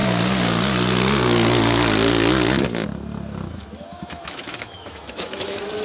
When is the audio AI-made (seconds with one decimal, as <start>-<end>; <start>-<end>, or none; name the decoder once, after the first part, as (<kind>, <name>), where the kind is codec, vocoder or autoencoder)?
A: 3.5-5.8 (autoencoder, DAC-VAE)